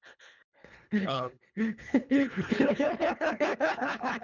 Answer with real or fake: fake